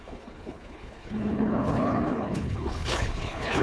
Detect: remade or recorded remade